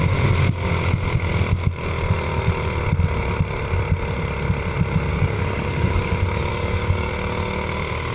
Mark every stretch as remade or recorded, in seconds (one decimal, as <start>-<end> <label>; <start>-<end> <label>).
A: 0.0-5.1 recorded; 5.1-6.1 remade; 6.1-6.5 recorded; 6.5-7.1 remade; 7.1-8.1 recorded